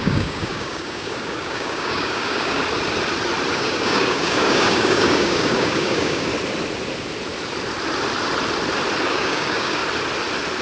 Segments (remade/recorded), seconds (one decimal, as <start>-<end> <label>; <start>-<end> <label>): 0.0-2.6 remade; 2.6-3.5 recorded; 3.5-6.3 remade; 6.3-9.0 recorded; 9.0-9.8 remade; 9.8-10.6 recorded